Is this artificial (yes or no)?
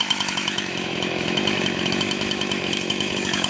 yes